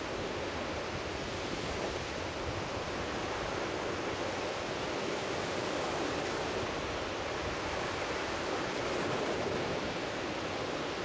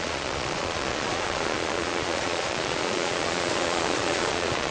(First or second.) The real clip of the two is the first